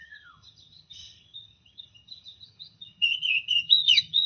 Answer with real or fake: fake